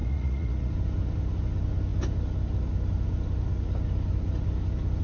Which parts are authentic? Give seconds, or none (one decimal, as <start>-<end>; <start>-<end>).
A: 0.7-5.0